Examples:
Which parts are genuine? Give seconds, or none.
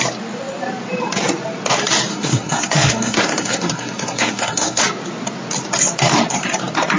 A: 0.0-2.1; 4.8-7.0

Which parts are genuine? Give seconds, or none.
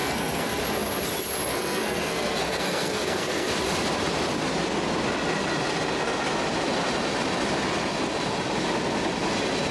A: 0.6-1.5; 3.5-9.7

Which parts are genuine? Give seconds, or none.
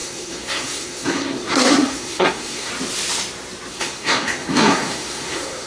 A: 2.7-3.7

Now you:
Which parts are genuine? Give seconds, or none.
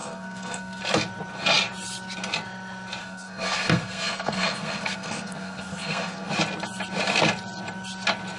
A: 0.8-3.0; 6.3-8.4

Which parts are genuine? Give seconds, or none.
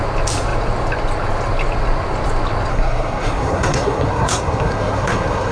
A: 0.0-2.7